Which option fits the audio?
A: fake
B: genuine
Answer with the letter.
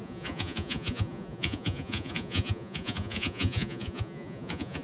A